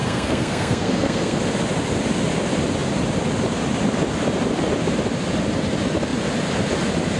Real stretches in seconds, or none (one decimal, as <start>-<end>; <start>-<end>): 1.4-7.2